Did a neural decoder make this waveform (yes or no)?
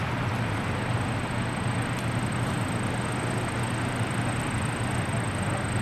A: no